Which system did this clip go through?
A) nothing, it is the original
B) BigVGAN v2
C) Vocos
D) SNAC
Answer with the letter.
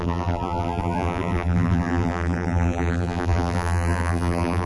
B